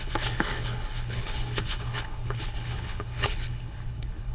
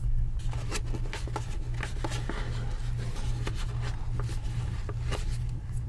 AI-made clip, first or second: first